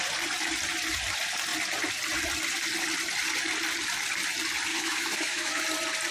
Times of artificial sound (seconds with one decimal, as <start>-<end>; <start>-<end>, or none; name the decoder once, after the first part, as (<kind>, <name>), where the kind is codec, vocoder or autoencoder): 4.7-5.6 (autoencoder, DAC-VAE)